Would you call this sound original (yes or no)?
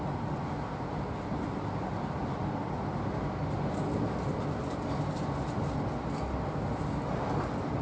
yes